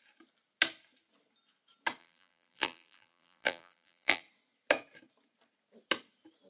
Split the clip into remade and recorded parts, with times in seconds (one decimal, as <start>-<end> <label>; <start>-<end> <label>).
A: 0.0-2.0 recorded; 2.0-4.2 remade; 4.2-6.5 recorded